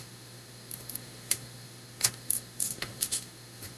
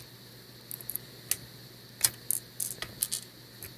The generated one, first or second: first